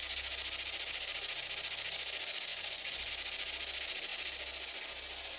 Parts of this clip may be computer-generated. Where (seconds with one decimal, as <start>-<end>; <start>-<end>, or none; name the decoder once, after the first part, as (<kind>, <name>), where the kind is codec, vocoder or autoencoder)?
2.5-3.1 (vocoder, Vocos)